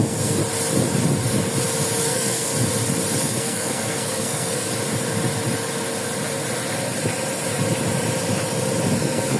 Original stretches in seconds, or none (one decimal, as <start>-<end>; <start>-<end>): 0.4-2.0; 2.5-3.2; 4.7-9.0